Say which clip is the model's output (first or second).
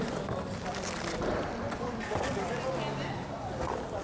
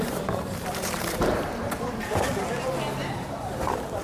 second